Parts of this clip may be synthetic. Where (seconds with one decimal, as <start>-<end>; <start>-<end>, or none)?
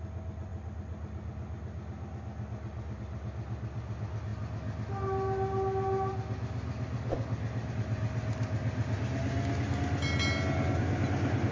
none